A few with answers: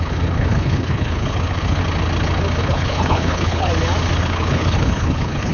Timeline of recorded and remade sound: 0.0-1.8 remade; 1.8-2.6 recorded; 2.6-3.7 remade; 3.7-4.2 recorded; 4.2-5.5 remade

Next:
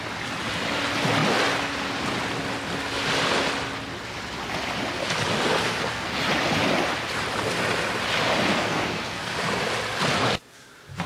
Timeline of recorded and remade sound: 0.0-5.6 recorded; 5.6-6.2 remade; 6.2-8.5 recorded; 8.5-9.3 remade; 9.3-11.1 recorded

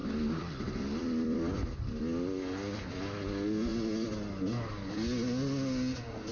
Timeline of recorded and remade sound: 0.0-2.0 remade; 2.0-6.3 recorded

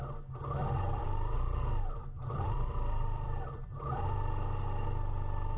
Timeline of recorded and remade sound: 0.0-0.6 recorded; 0.6-4.0 remade; 4.0-5.6 recorded

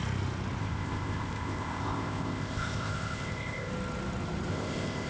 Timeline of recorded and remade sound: 0.0-0.6 recorded; 0.6-3.7 remade; 3.7-4.5 recorded; 4.5-5.1 remade